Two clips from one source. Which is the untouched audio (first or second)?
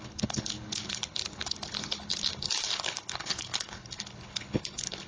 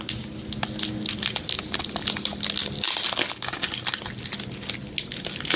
second